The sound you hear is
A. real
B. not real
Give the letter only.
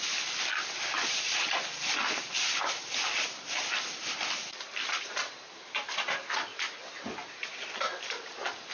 A